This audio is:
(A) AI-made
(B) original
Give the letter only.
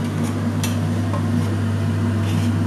B